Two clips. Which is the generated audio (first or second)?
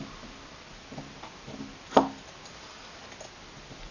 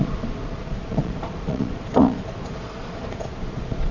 second